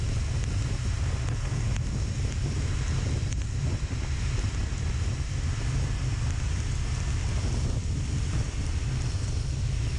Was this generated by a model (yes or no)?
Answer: no